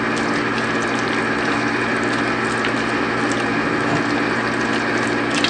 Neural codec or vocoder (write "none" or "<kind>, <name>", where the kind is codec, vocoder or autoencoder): none